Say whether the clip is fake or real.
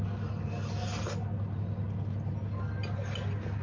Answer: real